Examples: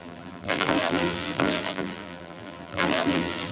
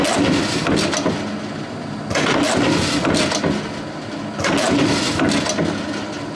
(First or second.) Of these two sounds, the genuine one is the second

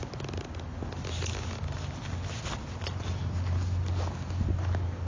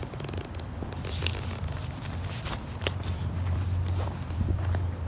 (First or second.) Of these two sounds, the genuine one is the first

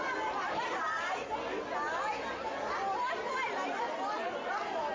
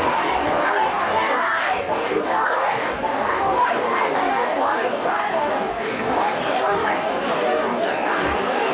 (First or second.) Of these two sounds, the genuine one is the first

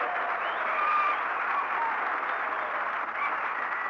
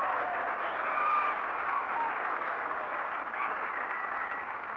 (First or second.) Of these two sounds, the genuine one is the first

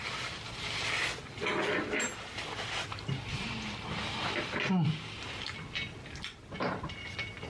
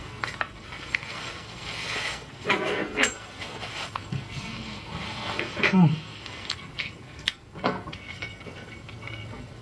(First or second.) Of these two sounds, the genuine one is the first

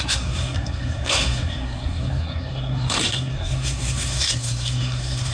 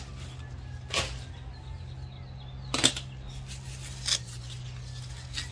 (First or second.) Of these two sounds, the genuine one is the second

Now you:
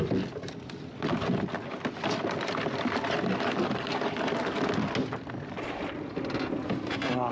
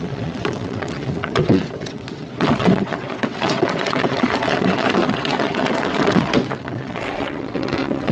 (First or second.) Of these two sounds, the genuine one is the first